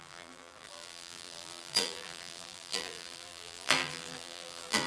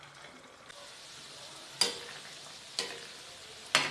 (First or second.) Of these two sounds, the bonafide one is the second